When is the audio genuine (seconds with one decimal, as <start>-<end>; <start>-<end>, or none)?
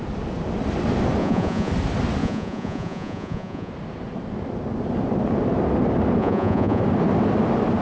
0.0-1.2; 1.7-2.2; 3.7-6.2; 6.8-7.8